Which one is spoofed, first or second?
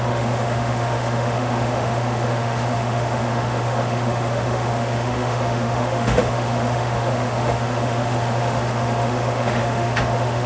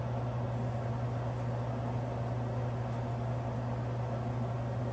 first